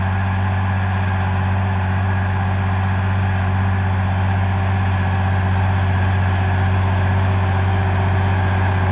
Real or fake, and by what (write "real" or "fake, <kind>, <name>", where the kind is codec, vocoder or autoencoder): real